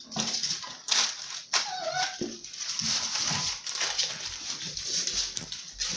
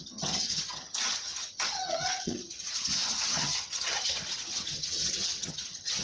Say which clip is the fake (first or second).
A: second